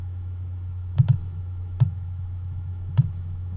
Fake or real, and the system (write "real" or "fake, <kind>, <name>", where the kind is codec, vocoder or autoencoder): fake, autoencoder, DAC-VAE